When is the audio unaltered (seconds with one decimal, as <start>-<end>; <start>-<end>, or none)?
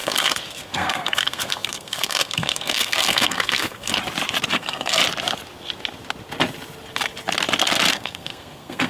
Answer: 3.9-4.5; 5.0-7.9